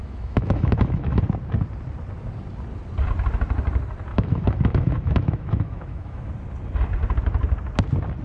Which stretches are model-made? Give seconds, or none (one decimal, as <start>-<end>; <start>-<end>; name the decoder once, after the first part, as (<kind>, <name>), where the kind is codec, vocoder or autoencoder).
0.0-1.2 (autoencoder, DAC-VAE); 4.1-6.3